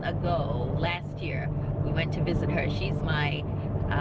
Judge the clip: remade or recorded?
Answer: recorded